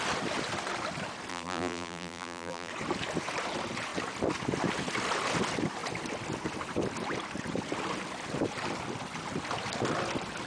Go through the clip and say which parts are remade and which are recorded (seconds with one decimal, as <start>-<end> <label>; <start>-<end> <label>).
0.0-1.3 recorded; 1.3-2.7 remade; 2.7-10.5 recorded